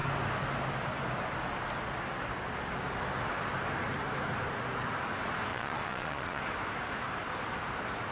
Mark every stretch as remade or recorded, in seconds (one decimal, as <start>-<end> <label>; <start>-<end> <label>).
0.0-5.5 recorded; 5.5-6.4 remade; 6.4-8.1 recorded